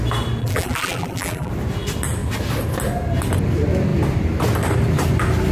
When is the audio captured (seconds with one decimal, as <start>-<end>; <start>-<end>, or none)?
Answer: 0.0-0.4; 1.5-5.5